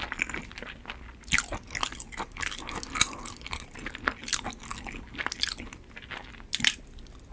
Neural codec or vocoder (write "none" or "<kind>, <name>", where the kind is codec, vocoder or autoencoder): none